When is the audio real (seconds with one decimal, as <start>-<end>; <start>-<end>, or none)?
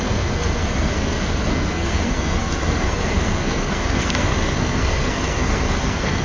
none